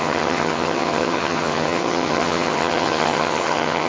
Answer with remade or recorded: remade